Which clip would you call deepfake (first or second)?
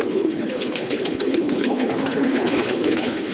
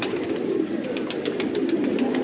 first